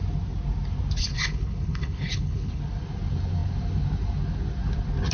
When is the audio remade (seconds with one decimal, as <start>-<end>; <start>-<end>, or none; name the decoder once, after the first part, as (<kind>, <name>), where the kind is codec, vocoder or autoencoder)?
1.0-2.6 (codec, HILCodec)